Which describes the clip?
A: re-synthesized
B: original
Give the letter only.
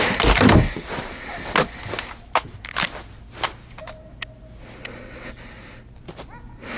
B